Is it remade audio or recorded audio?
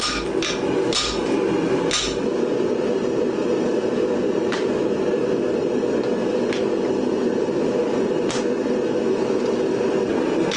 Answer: recorded